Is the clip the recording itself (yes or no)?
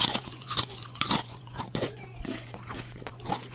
no